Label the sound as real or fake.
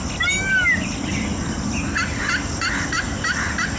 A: real